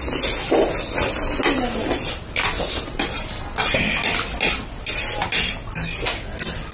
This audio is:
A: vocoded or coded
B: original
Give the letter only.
B